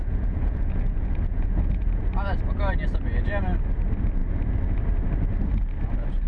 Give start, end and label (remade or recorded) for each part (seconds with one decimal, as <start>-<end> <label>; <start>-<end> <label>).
0.0-2.0 remade; 2.0-6.3 recorded